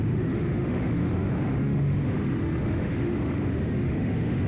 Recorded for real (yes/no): no